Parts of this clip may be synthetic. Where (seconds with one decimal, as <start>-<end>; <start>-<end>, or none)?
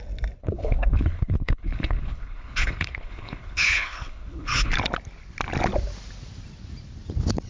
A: 0.4-4.7